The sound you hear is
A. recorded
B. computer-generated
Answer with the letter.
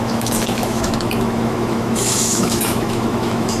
B